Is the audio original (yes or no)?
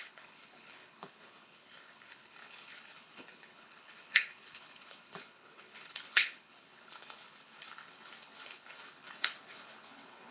no